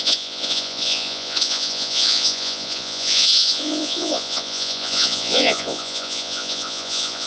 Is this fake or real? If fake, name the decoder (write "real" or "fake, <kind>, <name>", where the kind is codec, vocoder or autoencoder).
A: fake, vocoder, Vocos